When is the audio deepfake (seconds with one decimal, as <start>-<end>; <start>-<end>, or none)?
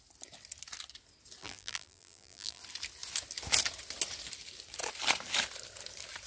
1.4-2.6